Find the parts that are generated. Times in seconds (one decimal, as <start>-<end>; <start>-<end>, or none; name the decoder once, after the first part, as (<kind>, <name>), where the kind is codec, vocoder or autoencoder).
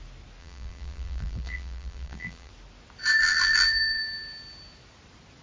0.4-2.5 (vocoder, BigVGAN v2); 3.2-4.0